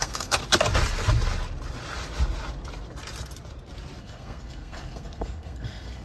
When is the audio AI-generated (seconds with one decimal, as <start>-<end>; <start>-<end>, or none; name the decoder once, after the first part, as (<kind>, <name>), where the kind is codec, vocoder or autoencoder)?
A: 0.0-0.4 (codec, SNAC); 4.0-6.0